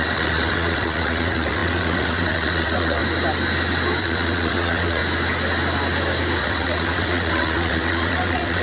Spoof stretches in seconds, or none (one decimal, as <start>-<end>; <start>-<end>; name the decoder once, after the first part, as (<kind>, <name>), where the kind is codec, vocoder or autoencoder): 0.0-3.0 (vocoder, WaveNeXt); 4.0-5.0; 6.4-8.6